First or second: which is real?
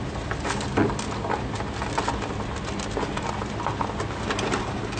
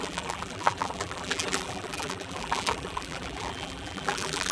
first